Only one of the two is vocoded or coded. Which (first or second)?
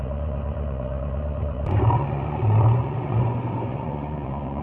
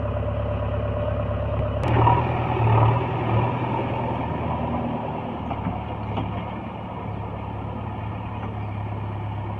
first